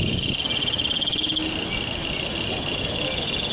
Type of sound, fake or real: real